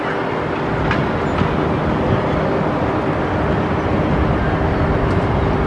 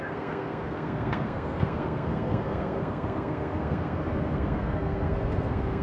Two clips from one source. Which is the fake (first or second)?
second